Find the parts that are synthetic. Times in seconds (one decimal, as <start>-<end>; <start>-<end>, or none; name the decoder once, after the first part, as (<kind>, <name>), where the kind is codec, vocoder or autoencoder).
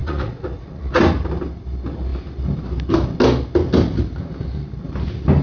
0.0-0.9 (vocoder, Vocos)